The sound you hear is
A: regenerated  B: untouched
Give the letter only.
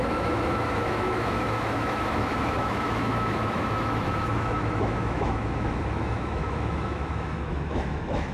A